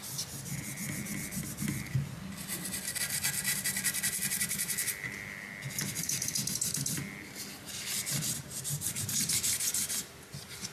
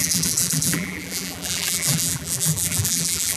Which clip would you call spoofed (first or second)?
second